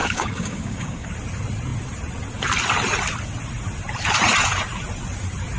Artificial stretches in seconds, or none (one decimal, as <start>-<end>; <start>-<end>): 0.0-1.1